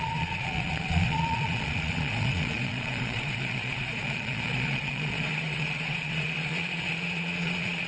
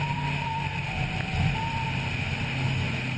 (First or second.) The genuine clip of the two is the second